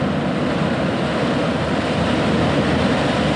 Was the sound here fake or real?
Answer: real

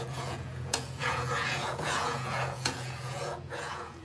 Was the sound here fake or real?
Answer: fake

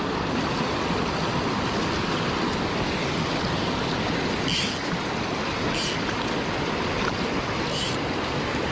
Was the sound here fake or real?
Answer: real